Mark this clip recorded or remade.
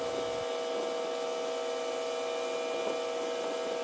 recorded